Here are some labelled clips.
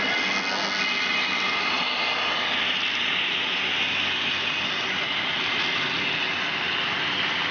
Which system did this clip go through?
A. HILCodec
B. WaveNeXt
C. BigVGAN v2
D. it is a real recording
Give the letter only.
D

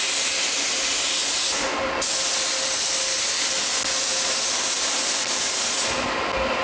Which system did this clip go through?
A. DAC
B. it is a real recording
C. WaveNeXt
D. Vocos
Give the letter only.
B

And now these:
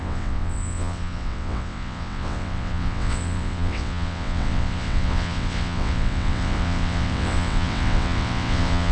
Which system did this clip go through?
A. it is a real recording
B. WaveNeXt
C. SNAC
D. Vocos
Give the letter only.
B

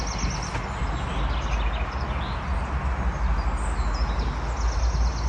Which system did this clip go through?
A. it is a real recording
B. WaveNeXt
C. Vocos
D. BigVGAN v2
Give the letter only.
A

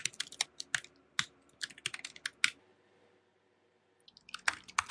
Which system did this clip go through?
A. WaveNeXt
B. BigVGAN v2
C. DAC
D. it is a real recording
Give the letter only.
D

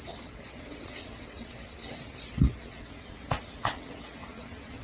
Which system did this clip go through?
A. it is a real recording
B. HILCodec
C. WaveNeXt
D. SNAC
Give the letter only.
C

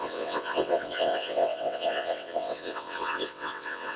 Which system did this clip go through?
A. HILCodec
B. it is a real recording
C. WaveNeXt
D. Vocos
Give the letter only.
C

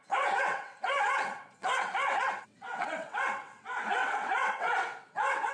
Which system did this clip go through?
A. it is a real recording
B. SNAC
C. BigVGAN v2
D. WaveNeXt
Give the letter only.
D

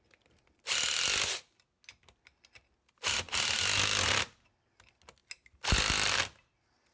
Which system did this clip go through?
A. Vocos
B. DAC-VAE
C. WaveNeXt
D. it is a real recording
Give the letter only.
D